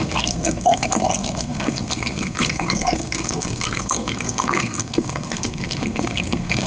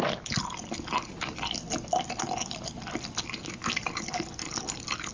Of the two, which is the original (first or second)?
second